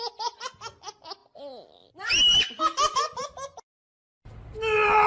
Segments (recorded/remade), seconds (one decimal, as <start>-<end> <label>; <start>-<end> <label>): 0.0-5.1 recorded